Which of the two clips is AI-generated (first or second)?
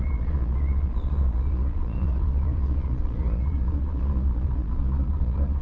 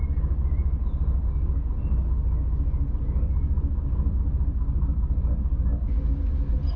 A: first